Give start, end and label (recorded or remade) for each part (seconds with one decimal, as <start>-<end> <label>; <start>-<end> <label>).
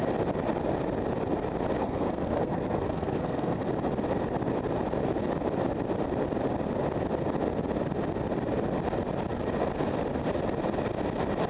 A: 0.0-1.8 recorded; 1.8-3.7 remade; 3.7-11.5 recorded